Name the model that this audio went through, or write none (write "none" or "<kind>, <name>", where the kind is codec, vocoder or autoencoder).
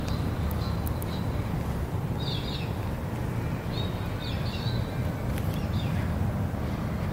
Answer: none